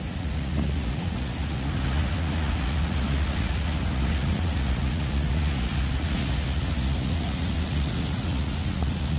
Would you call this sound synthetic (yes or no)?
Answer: yes